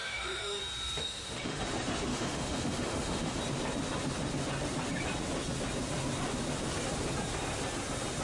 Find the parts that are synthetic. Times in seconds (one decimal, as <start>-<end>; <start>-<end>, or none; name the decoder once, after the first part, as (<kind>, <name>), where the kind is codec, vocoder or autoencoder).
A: 0.0-0.6 (autoencoder, DAC-VAE); 1.0-1.6; 2.1-3.4